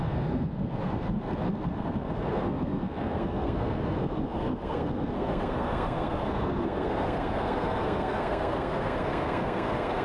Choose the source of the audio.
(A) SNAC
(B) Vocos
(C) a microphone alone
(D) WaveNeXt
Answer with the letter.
A